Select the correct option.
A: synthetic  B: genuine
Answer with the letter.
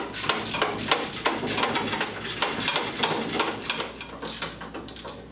B